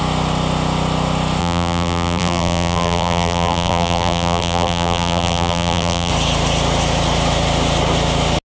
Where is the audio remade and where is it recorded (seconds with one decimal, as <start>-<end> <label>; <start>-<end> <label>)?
0.0-1.4 recorded; 1.4-6.1 remade; 6.1-8.4 recorded